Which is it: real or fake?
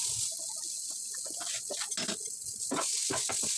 real